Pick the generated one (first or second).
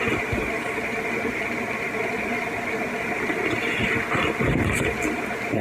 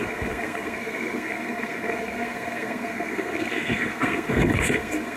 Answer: second